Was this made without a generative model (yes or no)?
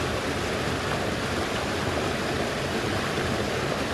yes